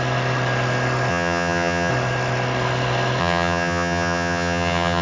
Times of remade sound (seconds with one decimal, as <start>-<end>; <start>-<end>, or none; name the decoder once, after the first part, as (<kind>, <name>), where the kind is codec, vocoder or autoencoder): 1.1-1.9 (vocoder, HiFi-GAN); 3.2-5.0